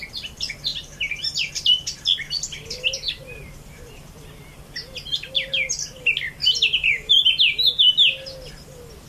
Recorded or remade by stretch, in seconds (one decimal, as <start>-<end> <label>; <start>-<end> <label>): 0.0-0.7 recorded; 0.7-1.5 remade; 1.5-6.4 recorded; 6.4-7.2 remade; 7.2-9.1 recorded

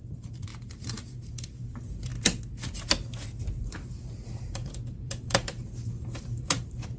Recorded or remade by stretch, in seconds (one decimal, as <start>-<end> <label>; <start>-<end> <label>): 0.0-2.1 remade; 2.1-3.6 recorded; 3.6-7.0 remade

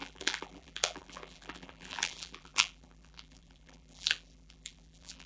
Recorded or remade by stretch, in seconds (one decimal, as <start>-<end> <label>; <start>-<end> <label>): 0.0-5.3 remade